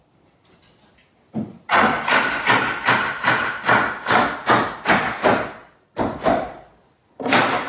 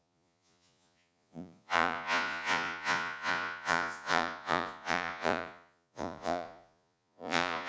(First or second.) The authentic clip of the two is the first